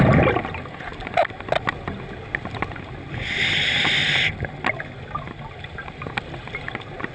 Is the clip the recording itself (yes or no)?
yes